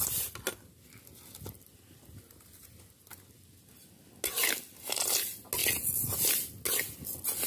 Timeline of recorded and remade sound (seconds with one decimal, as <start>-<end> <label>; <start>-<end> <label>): 0.0-7.5 recorded